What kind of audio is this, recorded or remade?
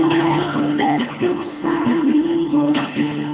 remade